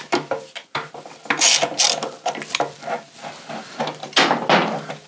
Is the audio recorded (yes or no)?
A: yes